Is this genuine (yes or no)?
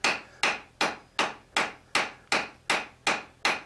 yes